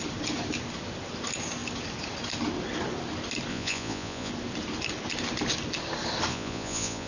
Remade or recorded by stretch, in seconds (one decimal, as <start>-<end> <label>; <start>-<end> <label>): 0.0-3.5 recorded; 3.5-4.3 remade; 4.3-6.3 recorded; 6.3-7.1 remade